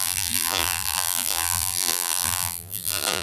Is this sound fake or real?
fake